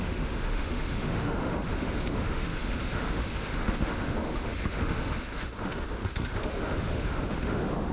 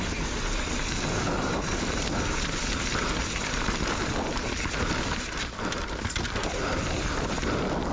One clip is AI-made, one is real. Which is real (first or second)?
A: second